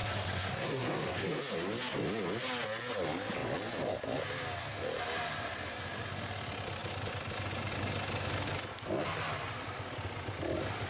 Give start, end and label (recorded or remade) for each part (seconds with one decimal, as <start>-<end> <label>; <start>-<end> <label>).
0.0-1.4 remade; 1.4-10.9 recorded